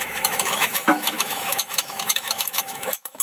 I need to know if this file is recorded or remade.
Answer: remade